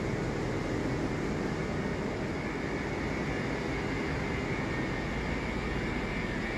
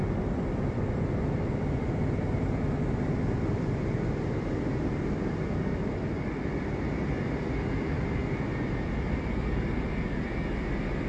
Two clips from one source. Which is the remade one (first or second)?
second